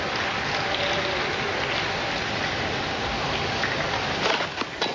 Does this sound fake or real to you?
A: real